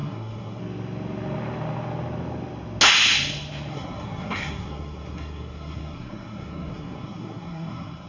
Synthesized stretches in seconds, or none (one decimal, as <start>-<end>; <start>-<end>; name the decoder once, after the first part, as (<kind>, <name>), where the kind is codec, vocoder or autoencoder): 0.0-0.6 (codec, SNAC); 3.7-8.1